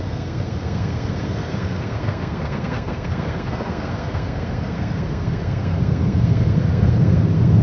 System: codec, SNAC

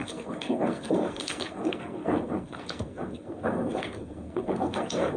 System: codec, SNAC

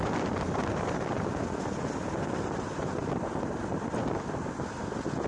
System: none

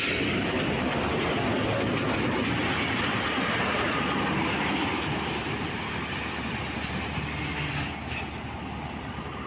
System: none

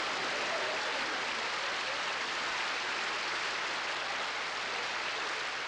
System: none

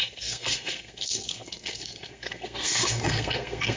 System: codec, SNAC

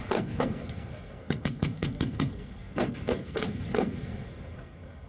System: codec, SNAC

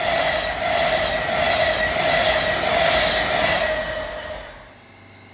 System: none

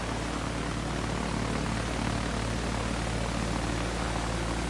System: none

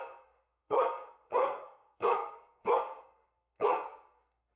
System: codec, SNAC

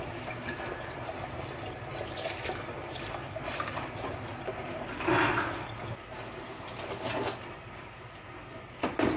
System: none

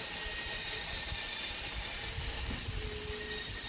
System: none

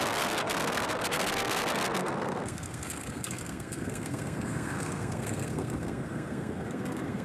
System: codec, SNAC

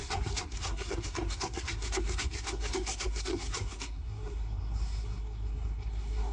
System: codec, SNAC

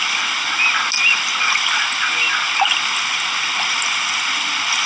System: none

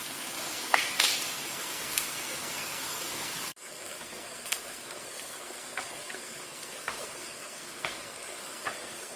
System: codec, SNAC